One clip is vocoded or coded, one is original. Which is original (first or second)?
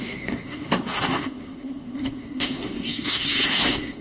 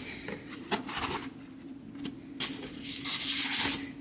second